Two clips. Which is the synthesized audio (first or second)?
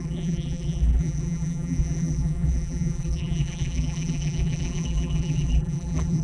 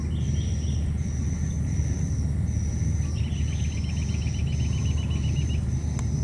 first